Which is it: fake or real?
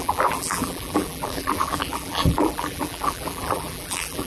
fake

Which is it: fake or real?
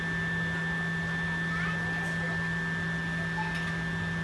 real